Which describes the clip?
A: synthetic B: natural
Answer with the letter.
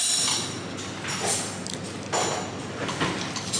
B